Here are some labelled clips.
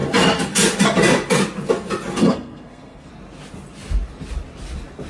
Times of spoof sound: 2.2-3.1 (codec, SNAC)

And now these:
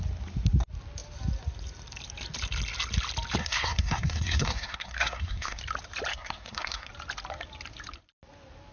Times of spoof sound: 3.4-5.6 (codec, SNAC); 6.1-6.9

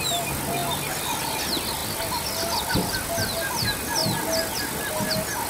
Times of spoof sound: none

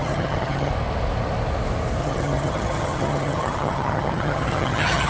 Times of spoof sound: 0.0-0.7 (vocoder, HiFi-GAN); 2.0-5.1

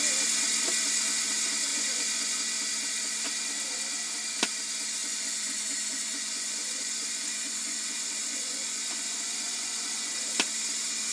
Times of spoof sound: 1.7-2.4 (vocoder, Vocos); 5.0-10.1

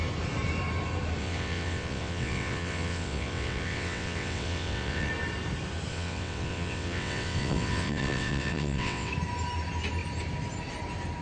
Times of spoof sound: 1.2-5.1 (vocoder, WaveNeXt); 5.9-9.1